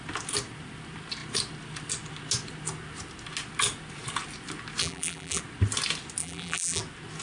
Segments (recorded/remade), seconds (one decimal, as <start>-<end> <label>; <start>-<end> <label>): 0.0-4.8 recorded; 4.8-5.4 remade; 5.4-6.2 recorded; 6.2-6.8 remade; 6.8-7.2 recorded